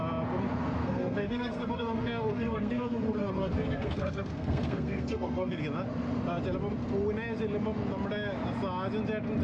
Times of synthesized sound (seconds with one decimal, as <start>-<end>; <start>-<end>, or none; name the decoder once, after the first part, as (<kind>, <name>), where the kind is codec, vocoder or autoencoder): 0.8-5.6 (codec, SNAC)